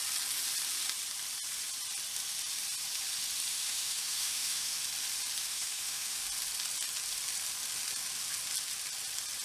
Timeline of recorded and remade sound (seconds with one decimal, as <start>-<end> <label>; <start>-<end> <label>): 0.0-3.5 recorded; 3.5-4.8 remade; 4.8-5.4 recorded; 5.4-6.2 remade; 6.2-9.4 recorded